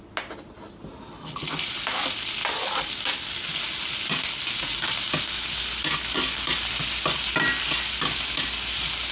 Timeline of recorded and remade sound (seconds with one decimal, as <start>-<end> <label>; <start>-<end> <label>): 0.0-9.1 recorded